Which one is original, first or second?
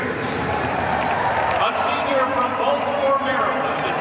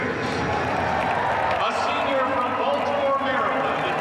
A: second